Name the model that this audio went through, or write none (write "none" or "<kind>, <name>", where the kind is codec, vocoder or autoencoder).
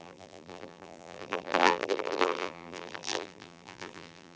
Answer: vocoder, BigVGAN v2